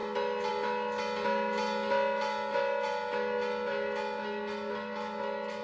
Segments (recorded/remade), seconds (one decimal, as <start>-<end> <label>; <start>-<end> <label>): 0.0-5.6 recorded